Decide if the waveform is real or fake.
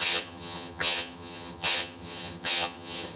fake